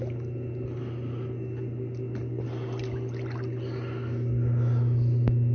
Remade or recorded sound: recorded